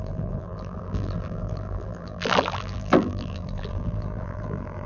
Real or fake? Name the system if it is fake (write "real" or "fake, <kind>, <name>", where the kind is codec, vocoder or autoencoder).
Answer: fake, vocoder, BigVGAN v2